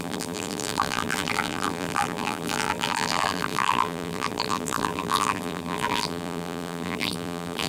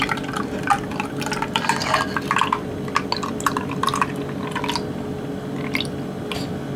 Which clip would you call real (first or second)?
second